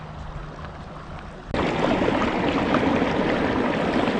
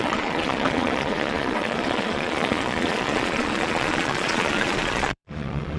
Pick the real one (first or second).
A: first